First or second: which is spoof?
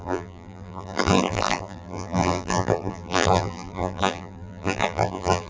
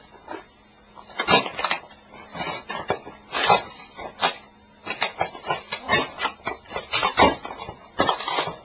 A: first